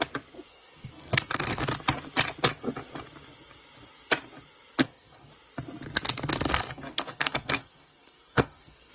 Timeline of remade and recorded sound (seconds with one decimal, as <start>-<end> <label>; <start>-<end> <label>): 0.0-0.5 recorded; 0.5-1.6 remade; 1.6-4.8 recorded; 4.8-5.3 remade; 5.3-6.5 recorded; 6.5-8.9 remade